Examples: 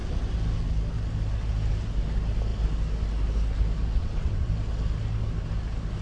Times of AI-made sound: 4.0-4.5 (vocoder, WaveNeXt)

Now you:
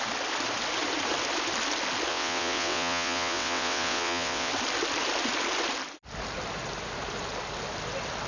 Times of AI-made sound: 2.1-4.5 (vocoder, WaveNeXt)